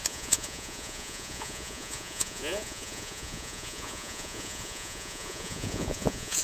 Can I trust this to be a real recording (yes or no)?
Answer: no